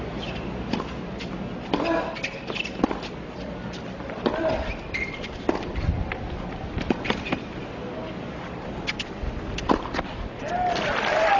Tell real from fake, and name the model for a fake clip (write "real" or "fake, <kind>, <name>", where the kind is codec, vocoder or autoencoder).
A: real